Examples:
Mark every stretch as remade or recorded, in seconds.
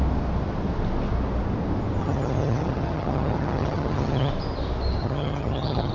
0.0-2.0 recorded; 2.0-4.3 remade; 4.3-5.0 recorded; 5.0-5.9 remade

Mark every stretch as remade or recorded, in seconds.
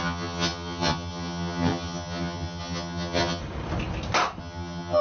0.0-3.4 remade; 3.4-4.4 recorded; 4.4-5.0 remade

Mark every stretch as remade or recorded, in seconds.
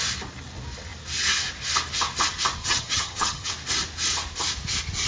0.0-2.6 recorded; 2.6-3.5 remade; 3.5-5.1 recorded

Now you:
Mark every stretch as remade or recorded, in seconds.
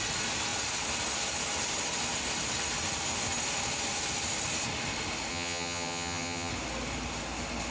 0.0-5.3 recorded; 5.3-6.5 remade; 6.5-7.7 recorded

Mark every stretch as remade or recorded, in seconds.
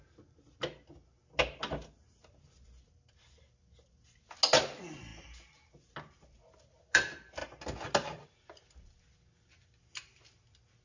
0.0-10.8 recorded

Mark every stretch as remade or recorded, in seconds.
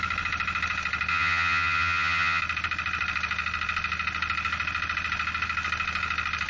0.0-1.1 recorded; 1.1-2.4 remade; 2.4-6.5 recorded